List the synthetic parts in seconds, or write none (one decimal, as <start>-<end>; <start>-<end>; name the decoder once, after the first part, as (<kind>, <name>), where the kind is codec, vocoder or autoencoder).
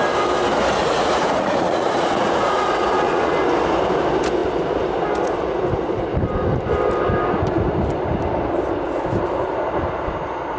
0.8-3.3 (vocoder, Vocos)